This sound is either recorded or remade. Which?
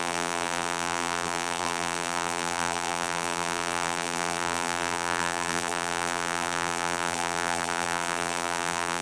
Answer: remade